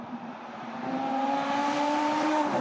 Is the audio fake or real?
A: fake